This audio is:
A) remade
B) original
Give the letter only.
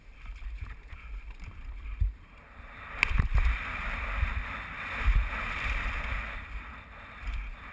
A